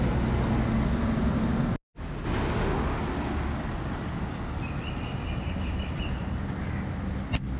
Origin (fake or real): real